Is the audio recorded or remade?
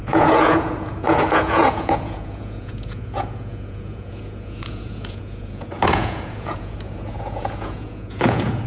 remade